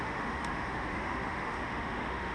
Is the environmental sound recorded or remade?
remade